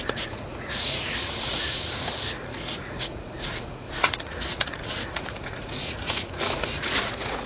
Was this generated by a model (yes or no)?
yes